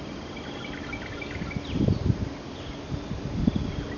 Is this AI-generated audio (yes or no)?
no